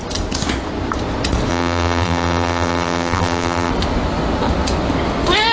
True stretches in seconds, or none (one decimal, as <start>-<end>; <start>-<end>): 0.0-1.5; 3.7-5.5